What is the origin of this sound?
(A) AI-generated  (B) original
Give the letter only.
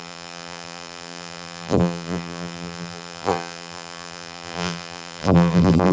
A